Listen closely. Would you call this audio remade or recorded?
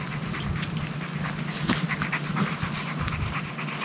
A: recorded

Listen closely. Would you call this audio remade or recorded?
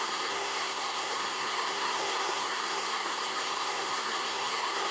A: remade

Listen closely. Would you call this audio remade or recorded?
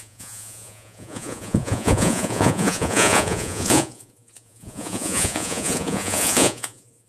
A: remade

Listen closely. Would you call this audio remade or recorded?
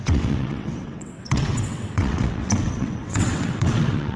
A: remade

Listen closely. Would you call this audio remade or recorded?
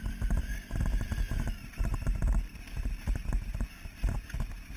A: recorded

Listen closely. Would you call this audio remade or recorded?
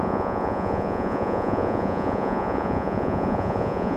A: remade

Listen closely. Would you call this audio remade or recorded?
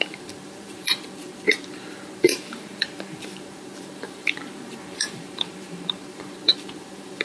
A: remade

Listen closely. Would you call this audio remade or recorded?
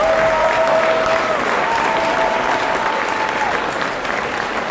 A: recorded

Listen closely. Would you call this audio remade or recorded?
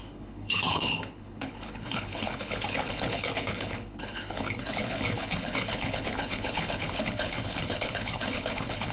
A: remade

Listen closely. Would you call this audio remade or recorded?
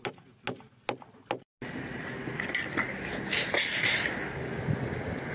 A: recorded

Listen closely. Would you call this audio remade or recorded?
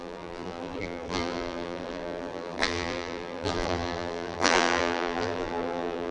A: remade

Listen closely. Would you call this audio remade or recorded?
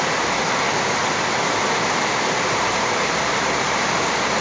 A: remade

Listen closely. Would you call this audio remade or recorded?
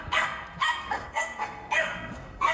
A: remade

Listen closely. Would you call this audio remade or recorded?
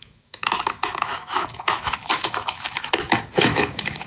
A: remade